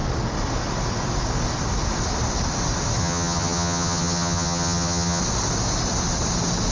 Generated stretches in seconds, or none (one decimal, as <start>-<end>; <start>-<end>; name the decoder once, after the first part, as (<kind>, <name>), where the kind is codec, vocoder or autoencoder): 3.0-5.2 (vocoder, HiFi-GAN)